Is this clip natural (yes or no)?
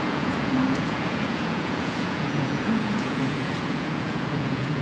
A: no